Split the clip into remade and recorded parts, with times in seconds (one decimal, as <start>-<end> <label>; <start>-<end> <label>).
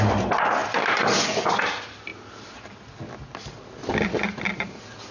0.0-5.1 recorded